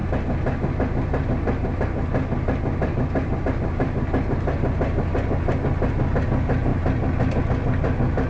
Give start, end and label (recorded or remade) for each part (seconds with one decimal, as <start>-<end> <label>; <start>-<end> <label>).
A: 0.0-8.3 recorded